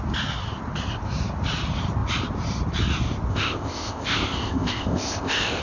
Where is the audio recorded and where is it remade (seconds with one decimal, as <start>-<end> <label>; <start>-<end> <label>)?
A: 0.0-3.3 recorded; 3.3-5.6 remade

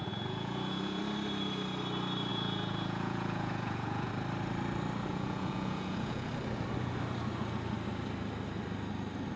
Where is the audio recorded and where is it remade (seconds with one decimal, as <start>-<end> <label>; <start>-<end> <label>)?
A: 0.0-1.0 remade; 1.0-2.3 recorded; 2.3-4.1 remade; 4.1-5.1 recorded; 5.1-6.3 remade; 6.3-9.4 recorded

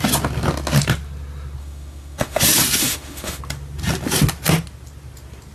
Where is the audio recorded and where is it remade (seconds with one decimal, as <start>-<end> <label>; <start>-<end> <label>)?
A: 0.0-1.6 recorded; 1.6-2.4 remade; 2.4-2.8 recorded; 2.8-3.4 remade; 3.4-5.5 recorded

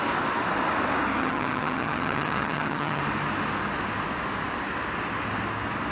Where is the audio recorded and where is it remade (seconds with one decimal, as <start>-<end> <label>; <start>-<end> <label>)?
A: 0.0-1.2 recorded; 1.2-3.0 remade; 3.0-5.9 recorded